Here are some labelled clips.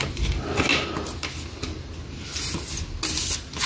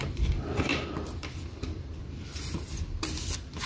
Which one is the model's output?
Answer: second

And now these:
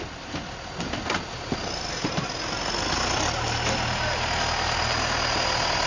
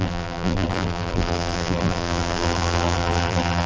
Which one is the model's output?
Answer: second